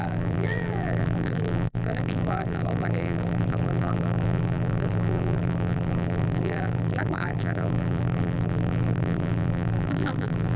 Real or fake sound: fake